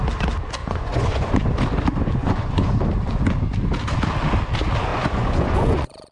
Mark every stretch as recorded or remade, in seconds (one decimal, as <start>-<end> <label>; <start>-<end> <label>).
0.0-0.6 recorded; 0.6-1.5 remade; 1.5-2.2 recorded; 2.2-2.7 remade; 2.7-4.9 recorded; 4.9-6.1 remade